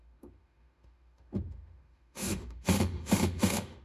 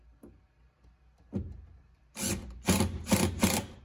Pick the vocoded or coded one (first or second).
first